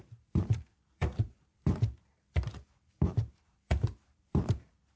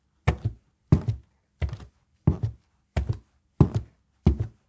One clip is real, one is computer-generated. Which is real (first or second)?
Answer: second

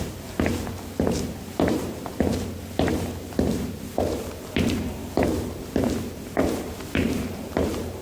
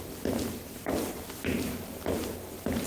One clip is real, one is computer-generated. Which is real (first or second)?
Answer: second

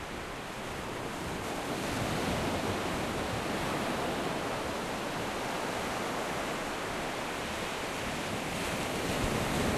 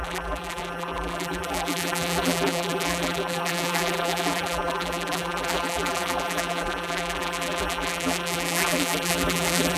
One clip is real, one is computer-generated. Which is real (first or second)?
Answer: first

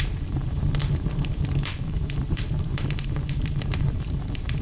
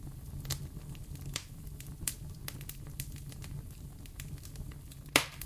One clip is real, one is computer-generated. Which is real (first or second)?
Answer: second